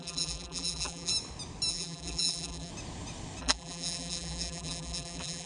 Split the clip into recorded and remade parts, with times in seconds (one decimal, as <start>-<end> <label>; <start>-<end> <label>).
0.0-1.1 remade; 1.1-1.7 recorded; 1.7-2.7 remade; 2.7-3.4 recorded; 3.4-5.5 remade